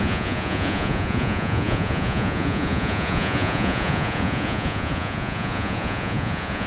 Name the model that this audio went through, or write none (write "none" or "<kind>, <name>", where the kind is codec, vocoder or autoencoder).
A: vocoder, Vocos